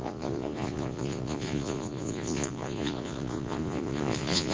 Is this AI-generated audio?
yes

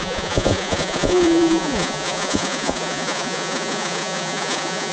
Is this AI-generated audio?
yes